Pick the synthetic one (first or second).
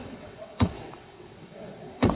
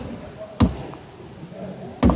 first